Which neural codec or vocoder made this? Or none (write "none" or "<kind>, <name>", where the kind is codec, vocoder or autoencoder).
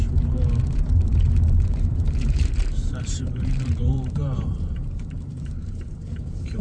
vocoder, BigVGAN v2